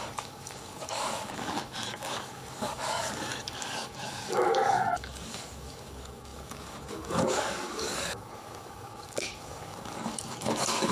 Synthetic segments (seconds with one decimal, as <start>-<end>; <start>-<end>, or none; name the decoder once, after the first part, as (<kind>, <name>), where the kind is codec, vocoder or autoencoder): 0.0-10.9 (codec, DAC)